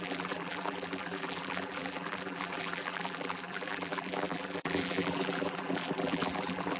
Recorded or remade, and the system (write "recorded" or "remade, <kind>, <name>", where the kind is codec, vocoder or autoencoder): remade, vocoder, BigVGAN v2